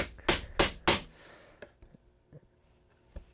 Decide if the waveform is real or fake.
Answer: real